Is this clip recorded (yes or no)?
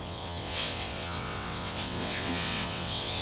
no